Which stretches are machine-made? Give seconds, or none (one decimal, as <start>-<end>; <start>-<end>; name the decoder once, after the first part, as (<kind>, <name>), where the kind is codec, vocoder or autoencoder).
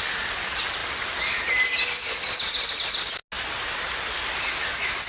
none